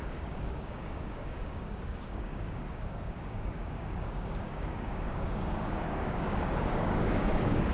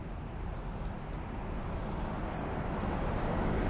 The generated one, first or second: first